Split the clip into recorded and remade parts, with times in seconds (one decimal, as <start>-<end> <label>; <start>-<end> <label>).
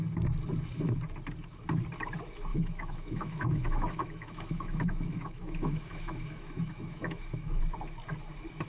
0.0-2.5 recorded; 2.5-7.6 remade; 7.6-8.7 recorded